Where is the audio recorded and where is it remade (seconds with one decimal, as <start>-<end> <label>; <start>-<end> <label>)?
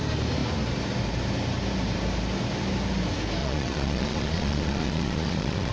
0.0-3.4 recorded; 3.4-5.7 remade